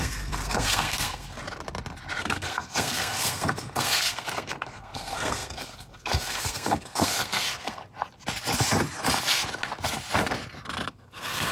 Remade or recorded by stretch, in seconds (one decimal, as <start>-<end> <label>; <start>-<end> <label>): 0.0-1.4 remade; 1.4-2.2 recorded; 2.2-7.8 remade; 7.8-10.9 recorded; 10.9-11.5 remade